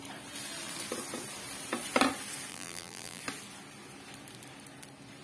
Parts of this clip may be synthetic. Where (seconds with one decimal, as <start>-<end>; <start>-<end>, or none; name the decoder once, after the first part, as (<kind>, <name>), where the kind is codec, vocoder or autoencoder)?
2.5-3.2 (vocoder, BigVGAN v2)